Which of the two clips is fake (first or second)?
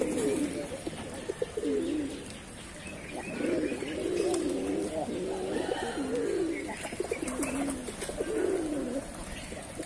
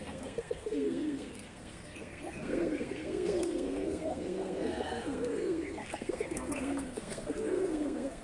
second